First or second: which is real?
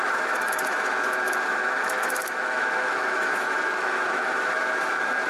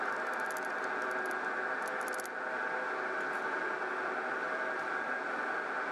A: second